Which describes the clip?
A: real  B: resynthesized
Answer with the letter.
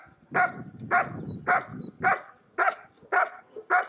A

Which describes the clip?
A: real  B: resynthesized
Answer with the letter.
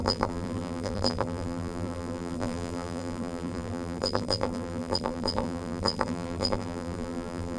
B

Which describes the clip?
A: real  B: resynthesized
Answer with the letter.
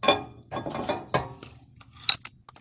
A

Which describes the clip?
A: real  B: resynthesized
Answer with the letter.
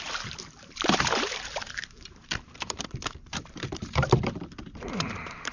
B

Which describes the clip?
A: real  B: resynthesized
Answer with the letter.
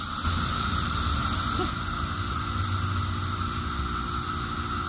A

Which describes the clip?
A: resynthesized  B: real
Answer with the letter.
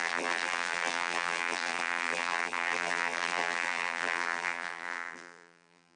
A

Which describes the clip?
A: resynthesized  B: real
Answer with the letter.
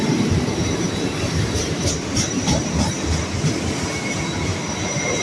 A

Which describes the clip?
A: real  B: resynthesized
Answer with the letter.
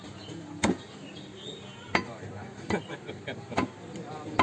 A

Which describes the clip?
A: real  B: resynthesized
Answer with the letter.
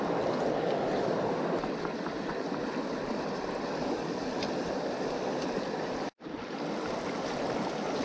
A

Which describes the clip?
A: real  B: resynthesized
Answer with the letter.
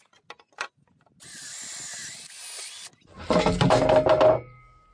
A